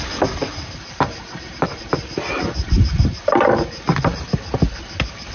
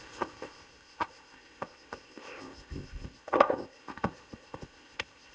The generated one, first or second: second